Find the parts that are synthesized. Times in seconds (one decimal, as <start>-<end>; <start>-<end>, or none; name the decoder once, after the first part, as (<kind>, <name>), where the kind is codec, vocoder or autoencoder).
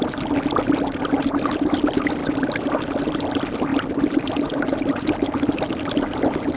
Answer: none